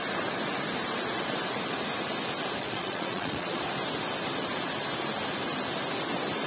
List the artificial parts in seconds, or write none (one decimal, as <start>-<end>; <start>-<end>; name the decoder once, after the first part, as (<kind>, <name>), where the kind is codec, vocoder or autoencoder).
2.6-3.6 (vocoder, Vocos)